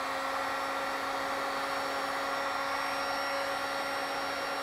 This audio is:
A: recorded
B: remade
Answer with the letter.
A